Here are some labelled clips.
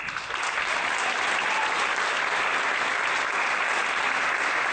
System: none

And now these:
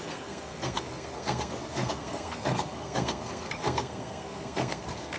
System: codec, SNAC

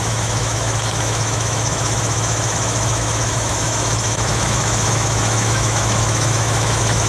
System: autoencoder, DAC-VAE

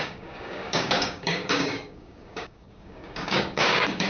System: codec, DAC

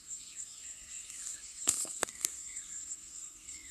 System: codec, SNAC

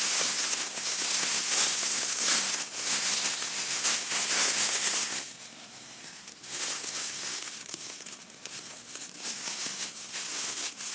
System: codec, SNAC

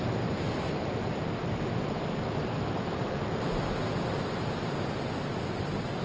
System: none